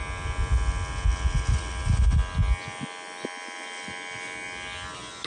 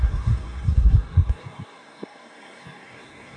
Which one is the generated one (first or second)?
second